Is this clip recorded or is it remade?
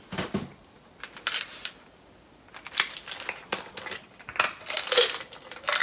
recorded